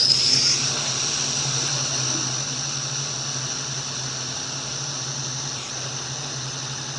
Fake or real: real